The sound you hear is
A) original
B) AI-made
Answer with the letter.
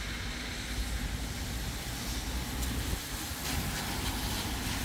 A